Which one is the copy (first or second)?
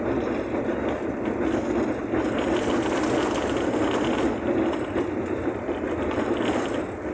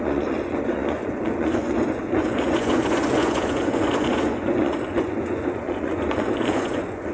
second